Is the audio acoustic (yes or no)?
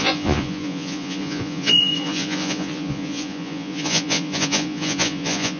no